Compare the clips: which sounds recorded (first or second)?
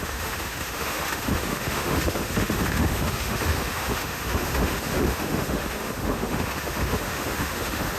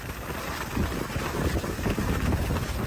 second